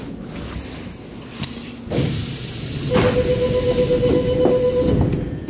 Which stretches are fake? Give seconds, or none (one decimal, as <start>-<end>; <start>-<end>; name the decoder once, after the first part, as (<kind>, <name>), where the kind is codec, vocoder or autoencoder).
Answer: none